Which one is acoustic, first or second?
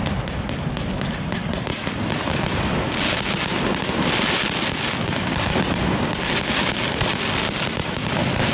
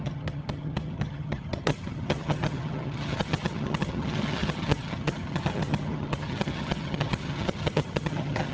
first